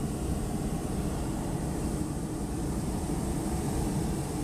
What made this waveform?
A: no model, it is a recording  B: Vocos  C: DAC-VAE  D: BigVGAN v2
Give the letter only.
A